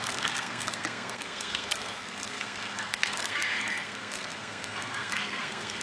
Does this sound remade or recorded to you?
remade